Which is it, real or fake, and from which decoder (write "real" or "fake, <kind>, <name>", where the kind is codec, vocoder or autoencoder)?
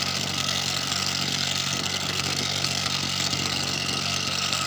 fake, codec, SNAC